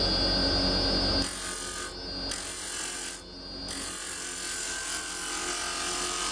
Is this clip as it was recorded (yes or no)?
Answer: yes